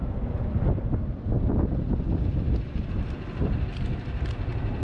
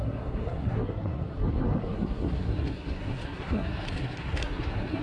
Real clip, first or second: first